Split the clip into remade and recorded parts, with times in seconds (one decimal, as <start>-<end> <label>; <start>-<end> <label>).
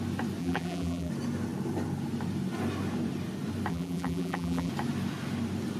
0.0-0.4 recorded; 0.4-1.1 remade; 1.1-3.7 recorded; 3.7-4.7 remade; 4.7-5.8 recorded